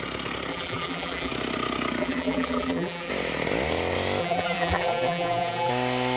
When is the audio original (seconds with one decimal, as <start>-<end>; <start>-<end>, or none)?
0.0-0.5; 1.3-2.0; 3.1-4.2; 5.7-6.2